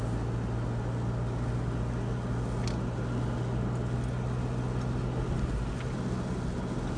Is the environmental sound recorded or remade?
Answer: recorded